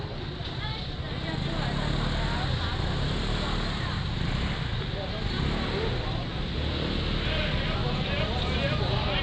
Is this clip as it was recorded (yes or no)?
yes